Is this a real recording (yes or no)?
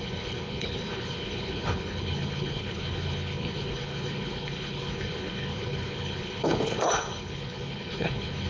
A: no